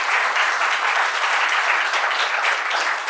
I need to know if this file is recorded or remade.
recorded